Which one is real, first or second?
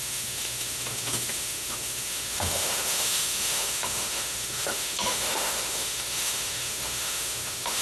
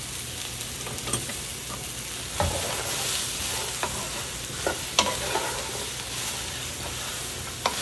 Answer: second